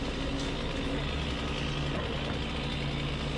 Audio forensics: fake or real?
real